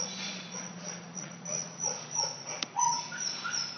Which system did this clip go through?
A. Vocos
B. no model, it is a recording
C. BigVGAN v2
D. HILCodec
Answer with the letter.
A